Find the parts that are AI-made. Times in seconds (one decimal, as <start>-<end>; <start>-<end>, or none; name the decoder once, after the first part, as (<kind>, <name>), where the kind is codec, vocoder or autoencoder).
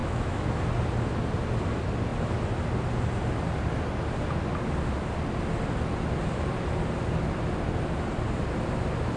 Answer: 0.0-0.6 (autoencoder, DAC-VAE)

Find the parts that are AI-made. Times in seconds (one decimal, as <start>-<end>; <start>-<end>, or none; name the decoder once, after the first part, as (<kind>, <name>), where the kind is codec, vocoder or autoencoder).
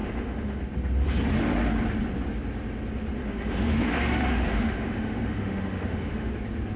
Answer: 0.0-0.6 (autoencoder, DAC-VAE); 3.2-6.3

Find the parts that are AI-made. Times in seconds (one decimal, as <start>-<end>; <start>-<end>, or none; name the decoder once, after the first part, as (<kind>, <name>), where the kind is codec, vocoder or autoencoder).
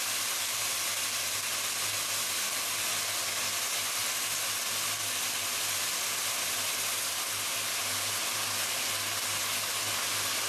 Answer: none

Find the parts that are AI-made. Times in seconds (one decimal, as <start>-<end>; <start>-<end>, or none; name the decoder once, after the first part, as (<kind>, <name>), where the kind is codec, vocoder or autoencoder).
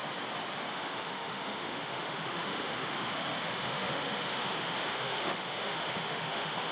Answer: 0.7-6.7 (autoencoder, DAC-VAE)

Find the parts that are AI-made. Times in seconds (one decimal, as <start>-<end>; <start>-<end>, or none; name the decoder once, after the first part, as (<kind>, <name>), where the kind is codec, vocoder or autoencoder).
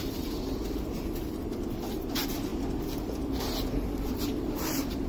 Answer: none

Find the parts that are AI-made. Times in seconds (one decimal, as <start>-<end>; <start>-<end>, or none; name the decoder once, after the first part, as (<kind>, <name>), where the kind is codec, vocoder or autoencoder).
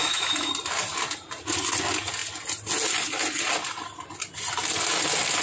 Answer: 0.0-0.5 (autoencoder, DAC-VAE)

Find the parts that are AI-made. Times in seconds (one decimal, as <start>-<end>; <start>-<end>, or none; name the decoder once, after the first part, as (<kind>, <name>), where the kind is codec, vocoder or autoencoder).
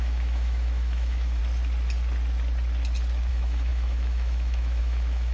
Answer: 0.0-1.4 (autoencoder, DAC-VAE); 3.3-5.3